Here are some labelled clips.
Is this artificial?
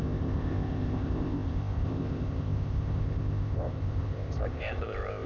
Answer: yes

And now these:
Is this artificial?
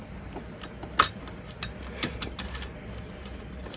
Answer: no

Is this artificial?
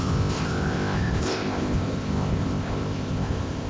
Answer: yes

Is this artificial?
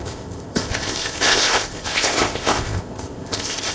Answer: yes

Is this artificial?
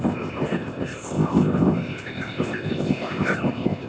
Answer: yes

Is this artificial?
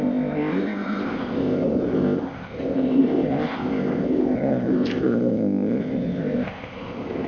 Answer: yes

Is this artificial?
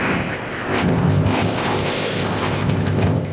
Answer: yes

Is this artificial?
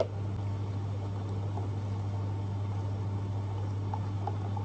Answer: no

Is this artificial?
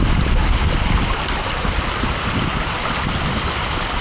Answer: no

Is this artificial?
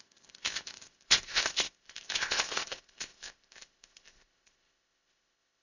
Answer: yes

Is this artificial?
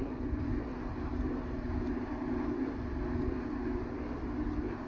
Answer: no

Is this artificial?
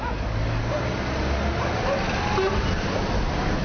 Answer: no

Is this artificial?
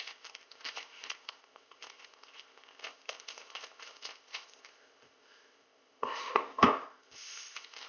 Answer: yes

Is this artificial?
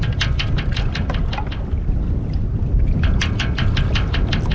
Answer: no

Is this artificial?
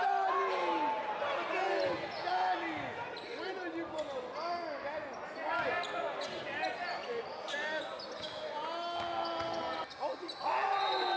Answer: no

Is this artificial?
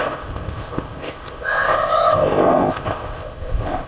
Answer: yes